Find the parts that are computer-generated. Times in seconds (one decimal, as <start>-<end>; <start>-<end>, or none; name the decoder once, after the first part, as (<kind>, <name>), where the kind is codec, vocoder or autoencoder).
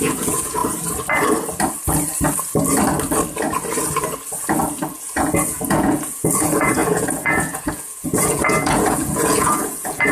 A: 0.0-0.6 (vocoder, Vocos); 4.9-10.1